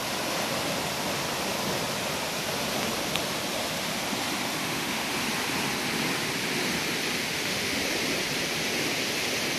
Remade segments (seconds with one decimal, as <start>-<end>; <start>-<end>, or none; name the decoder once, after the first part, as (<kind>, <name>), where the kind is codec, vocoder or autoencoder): 4.6-5.1 (autoencoder, DAC-VAE); 7.2-7.8